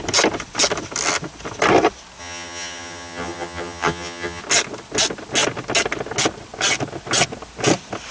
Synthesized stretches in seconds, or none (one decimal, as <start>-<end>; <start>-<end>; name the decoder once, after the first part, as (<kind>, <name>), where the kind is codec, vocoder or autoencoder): 2.2-4.4 (vocoder, HiFi-GAN)